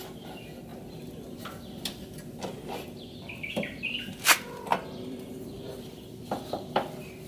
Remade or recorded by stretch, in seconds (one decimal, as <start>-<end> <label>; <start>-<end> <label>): 0.0-4.7 recorded; 4.7-5.4 remade; 5.4-7.3 recorded